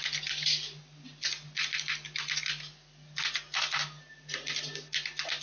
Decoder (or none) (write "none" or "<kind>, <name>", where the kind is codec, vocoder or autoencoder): none